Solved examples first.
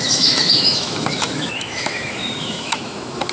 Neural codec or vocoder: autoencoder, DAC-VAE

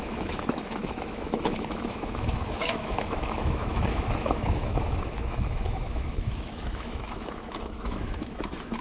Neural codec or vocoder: autoencoder, DAC-VAE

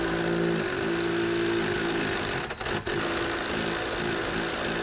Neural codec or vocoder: none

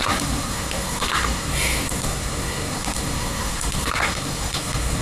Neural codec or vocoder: codec, SNAC